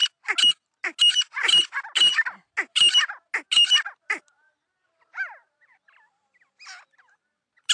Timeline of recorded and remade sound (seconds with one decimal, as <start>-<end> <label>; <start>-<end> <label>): 0.0-7.7 recorded